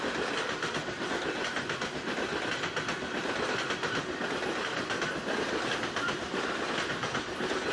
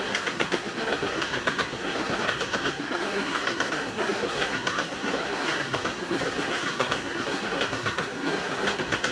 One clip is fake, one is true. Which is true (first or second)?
first